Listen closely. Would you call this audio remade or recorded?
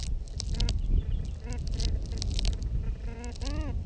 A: recorded